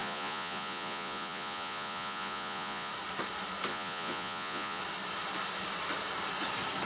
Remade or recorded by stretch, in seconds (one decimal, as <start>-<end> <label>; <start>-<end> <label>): 0.0-2.9 remade; 2.9-3.7 recorded; 3.7-4.8 remade; 4.8-6.9 recorded